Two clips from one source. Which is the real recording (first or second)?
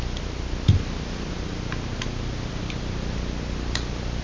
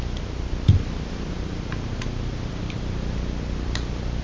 first